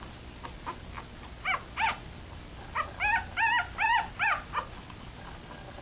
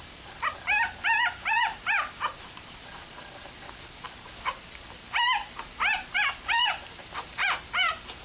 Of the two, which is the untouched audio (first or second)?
first